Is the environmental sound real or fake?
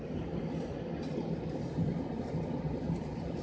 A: real